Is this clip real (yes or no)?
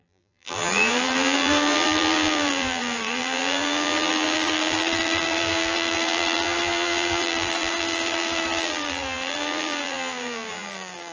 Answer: no